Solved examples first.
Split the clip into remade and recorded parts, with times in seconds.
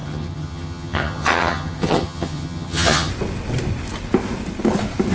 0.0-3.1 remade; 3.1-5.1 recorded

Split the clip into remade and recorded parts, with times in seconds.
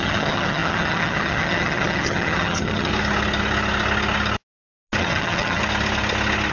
0.0-2.9 remade; 2.9-5.0 recorded; 5.0-5.6 remade; 5.6-6.5 recorded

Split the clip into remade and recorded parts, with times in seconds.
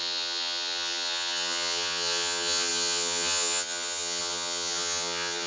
0.0-5.5 remade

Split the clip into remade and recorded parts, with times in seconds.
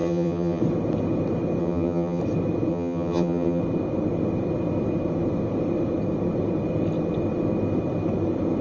0.0-0.6 remade; 0.6-1.6 recorded; 1.6-2.2 remade; 2.2-2.7 recorded; 2.7-3.6 remade; 3.6-8.6 recorded